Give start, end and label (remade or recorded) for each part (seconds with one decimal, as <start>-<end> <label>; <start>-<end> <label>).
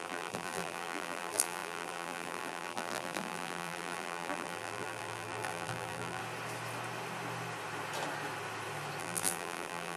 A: 0.0-6.2 remade; 6.2-9.0 recorded; 9.0-10.0 remade